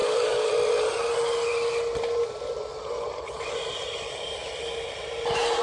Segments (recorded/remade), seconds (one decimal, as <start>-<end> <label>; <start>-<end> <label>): 0.0-0.5 remade; 0.5-5.6 recorded